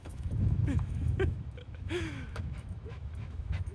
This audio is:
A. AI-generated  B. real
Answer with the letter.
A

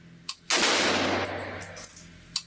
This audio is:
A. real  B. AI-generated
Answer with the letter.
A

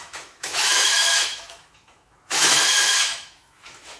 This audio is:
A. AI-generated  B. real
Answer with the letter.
A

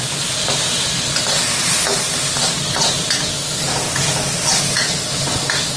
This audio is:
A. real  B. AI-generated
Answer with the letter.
A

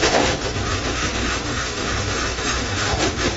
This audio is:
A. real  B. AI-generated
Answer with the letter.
B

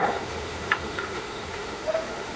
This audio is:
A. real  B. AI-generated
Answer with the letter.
B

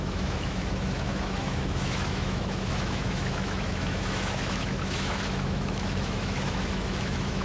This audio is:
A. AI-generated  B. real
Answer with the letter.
A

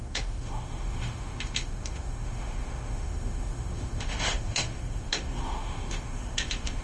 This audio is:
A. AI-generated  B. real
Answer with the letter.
A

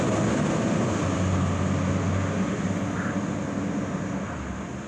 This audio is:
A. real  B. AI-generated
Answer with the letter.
A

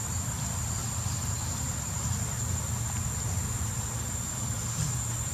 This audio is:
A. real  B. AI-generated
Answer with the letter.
A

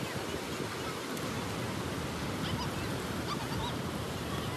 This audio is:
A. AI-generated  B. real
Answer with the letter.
B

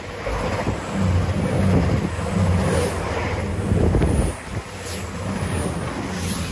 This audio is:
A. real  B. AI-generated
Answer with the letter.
A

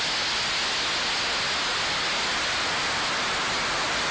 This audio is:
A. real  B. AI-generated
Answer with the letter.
A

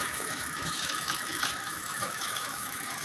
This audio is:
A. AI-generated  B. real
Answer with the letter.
A